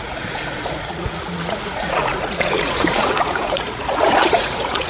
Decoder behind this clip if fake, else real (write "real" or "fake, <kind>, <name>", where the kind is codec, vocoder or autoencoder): fake, vocoder, Vocos